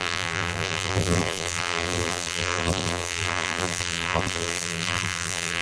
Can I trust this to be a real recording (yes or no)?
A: no